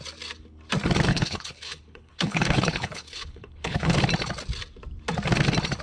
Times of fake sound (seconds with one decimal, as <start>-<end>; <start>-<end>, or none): 1.1-4.0